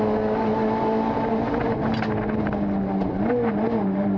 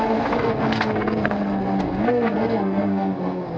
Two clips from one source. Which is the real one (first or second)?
first